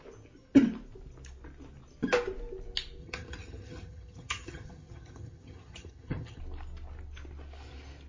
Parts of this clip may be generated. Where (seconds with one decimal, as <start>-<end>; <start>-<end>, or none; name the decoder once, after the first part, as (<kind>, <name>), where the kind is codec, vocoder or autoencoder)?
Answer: 3.0-6.4 (vocoder, HiFi-GAN)